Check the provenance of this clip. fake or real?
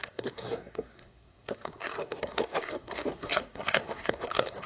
fake